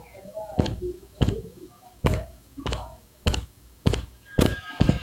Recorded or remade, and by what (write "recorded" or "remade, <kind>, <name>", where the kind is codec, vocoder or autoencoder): remade, codec, DAC